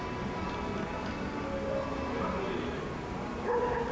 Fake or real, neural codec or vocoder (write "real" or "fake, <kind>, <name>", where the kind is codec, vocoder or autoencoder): real